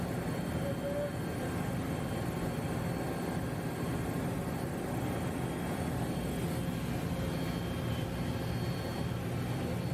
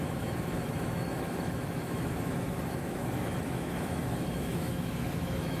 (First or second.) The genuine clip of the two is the first